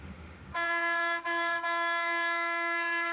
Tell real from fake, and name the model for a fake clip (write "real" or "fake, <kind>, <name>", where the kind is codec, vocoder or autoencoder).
fake, autoencoder, DAC-VAE